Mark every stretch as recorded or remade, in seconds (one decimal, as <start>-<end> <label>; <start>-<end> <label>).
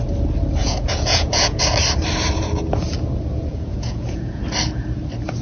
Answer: 0.0-0.6 recorded; 0.6-1.6 remade; 1.6-3.5 recorded; 3.5-4.4 remade; 4.4-5.4 recorded